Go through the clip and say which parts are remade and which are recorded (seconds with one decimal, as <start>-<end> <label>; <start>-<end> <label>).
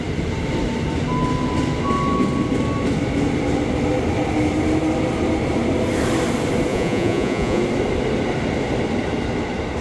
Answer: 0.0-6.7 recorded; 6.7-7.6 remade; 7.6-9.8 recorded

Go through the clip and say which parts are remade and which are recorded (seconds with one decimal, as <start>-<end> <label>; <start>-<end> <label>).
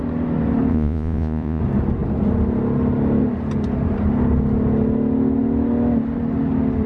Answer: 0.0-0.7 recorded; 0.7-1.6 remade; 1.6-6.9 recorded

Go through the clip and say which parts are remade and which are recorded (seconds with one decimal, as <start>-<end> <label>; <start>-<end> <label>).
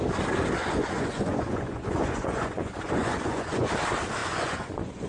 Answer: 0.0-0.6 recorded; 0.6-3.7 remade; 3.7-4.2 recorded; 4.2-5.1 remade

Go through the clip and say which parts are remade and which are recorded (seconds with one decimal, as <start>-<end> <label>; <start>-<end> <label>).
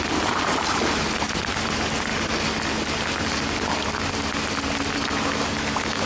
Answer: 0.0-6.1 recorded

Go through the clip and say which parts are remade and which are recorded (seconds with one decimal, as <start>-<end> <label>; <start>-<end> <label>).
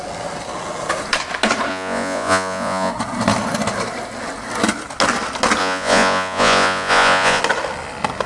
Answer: 0.0-1.7 recorded; 1.7-2.9 remade; 2.9-5.6 recorded; 5.6-7.4 remade; 7.4-8.3 recorded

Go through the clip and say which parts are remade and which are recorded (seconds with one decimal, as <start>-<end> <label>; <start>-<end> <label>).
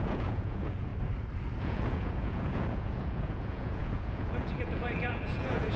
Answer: 0.0-0.9 remade; 0.9-1.6 recorded; 1.6-5.8 remade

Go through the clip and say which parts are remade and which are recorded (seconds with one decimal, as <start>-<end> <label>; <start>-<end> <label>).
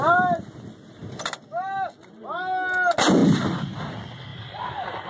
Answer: 0.0-5.1 recorded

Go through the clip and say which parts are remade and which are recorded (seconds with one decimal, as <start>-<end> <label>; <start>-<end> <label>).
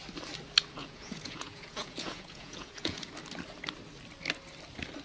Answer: 0.0-0.8 recorded; 0.8-3.1 remade; 3.1-5.0 recorded